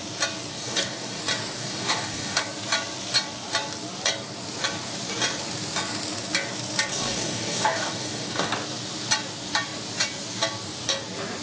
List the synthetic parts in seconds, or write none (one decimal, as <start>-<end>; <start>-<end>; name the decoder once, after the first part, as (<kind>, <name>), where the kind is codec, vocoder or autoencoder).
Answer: 0.5-1.2 (codec, DAC); 1.6-2.4; 6.9-8.5